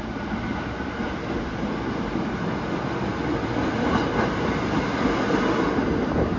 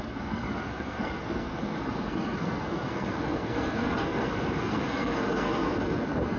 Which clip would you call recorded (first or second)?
first